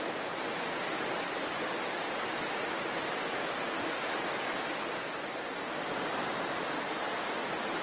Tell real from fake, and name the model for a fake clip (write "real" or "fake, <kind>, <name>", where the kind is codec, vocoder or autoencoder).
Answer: real